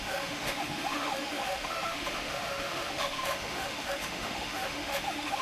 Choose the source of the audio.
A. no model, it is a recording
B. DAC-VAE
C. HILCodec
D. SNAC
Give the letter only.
B